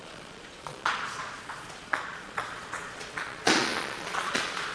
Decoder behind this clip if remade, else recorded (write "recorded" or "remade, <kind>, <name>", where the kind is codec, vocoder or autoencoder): remade, vocoder, Vocos